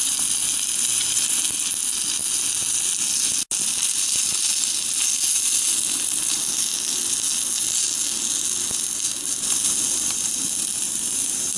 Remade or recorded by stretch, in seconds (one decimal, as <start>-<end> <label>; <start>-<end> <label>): 0.0-11.6 recorded

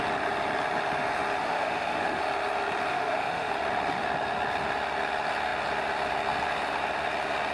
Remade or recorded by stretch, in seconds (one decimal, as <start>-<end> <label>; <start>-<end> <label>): 0.0-1.4 recorded; 1.4-2.2 remade; 2.2-2.9 recorded; 2.9-3.5 remade; 3.5-7.5 recorded

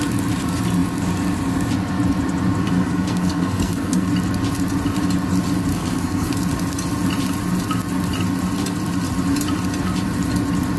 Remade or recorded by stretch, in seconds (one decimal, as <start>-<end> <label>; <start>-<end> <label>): 0.0-2.6 recorded; 2.6-4.1 remade; 4.1-5.7 recorded; 5.7-6.3 remade; 6.3-10.8 recorded

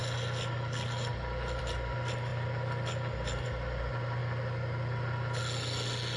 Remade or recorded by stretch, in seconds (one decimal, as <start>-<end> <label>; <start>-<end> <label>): 0.0-6.2 recorded

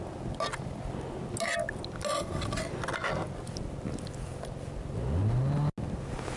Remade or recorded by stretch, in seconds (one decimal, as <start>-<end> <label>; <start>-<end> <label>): 0.0-6.4 recorded

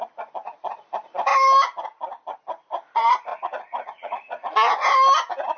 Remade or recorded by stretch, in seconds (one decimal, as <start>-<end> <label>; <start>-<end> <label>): 0.0-3.3 recorded; 3.3-4.7 remade; 4.7-5.6 recorded

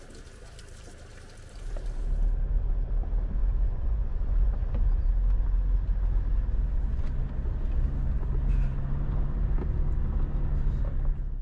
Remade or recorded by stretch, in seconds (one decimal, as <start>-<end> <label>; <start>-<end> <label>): 0.0-3.4 recorded; 3.4-5.1 remade; 5.1-11.4 recorded